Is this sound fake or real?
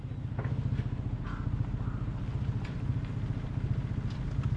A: real